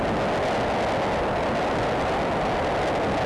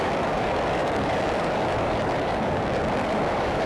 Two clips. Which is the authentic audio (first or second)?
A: first